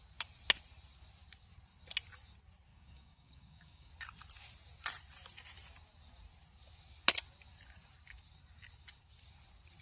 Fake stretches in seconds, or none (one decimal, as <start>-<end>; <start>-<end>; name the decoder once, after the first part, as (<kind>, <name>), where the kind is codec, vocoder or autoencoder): 2.7-3.9 (codec, DAC)